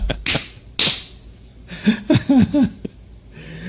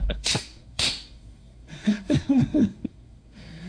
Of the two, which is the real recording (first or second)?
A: first